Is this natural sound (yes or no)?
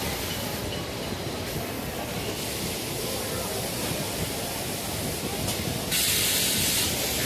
yes